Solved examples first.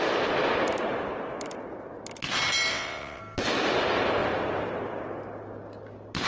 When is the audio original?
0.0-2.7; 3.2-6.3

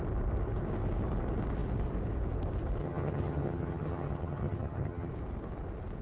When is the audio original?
0.0-2.8; 5.1-6.0

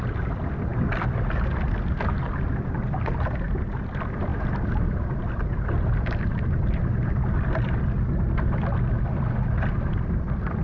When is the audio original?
0.0-4.3; 5.3-10.6